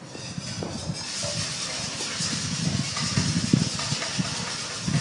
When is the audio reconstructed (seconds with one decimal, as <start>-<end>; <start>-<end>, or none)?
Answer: none